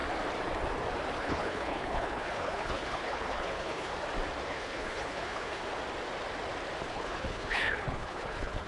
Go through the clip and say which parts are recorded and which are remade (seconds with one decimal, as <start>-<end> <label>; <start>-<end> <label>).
0.0-1.2 recorded; 1.2-3.9 remade; 3.9-4.5 recorded; 4.5-5.6 remade; 5.6-6.9 recorded; 6.9-8.7 remade